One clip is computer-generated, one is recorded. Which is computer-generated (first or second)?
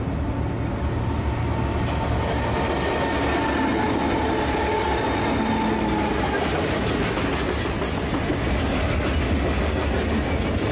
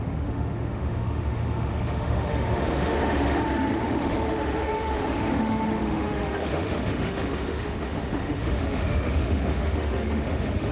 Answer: second